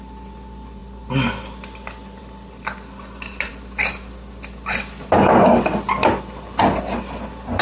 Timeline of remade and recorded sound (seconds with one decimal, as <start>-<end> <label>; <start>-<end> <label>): 0.0-7.6 recorded